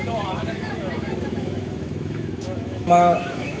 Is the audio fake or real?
fake